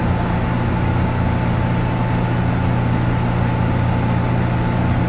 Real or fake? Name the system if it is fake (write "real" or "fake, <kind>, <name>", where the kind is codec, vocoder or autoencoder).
real